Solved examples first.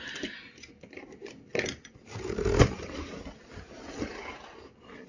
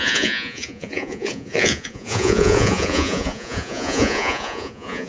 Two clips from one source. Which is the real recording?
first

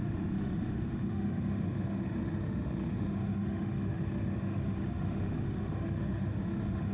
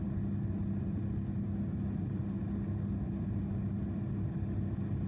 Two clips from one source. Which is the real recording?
second